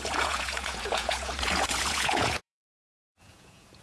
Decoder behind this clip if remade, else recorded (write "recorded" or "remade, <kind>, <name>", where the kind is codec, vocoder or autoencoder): remade, vocoder, Vocos